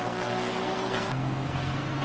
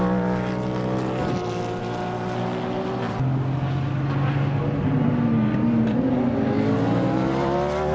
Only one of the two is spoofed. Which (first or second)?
first